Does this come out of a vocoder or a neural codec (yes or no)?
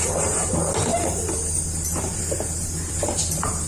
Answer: yes